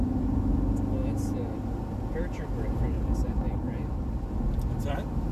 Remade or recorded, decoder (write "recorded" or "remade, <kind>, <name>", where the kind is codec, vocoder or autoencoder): recorded